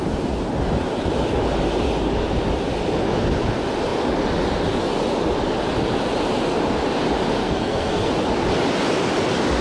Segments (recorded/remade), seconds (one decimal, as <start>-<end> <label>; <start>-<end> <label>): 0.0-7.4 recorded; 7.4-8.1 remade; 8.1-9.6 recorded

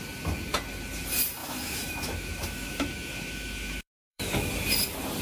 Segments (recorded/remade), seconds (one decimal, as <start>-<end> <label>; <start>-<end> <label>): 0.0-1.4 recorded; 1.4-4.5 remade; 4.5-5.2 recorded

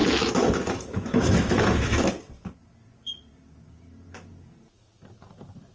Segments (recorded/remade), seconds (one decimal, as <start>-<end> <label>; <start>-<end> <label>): 0.0-2.1 remade; 2.1-5.7 recorded